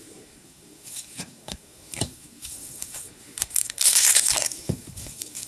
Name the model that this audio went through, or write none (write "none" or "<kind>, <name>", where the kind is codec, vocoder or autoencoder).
codec, SNAC